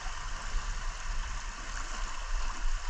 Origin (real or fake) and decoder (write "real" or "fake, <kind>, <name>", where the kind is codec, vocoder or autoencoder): real